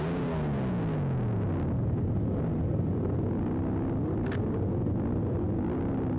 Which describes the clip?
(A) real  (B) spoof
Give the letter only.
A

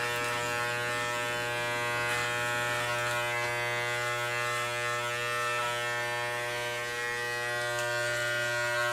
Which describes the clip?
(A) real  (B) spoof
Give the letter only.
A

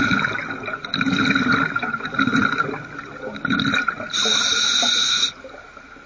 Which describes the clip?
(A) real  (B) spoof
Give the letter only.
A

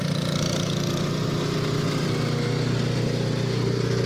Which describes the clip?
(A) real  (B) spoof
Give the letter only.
A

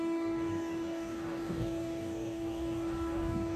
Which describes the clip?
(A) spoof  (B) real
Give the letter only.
A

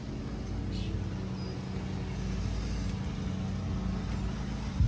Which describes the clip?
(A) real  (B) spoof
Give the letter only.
A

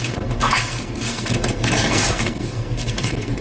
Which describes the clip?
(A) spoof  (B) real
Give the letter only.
A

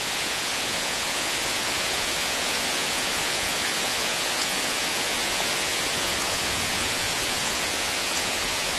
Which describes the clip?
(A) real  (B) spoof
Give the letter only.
B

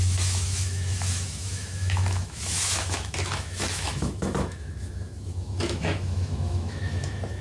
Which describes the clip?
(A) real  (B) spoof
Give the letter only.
B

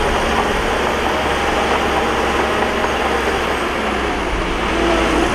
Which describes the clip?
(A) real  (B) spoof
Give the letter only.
A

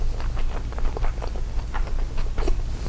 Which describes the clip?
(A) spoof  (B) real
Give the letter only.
B